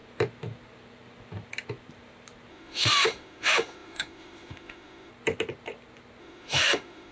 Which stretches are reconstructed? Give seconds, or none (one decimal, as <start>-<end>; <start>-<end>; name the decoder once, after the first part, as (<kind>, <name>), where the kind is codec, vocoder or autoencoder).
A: 2.5-5.1 (autoencoder, DAC-VAE); 6.2-7.1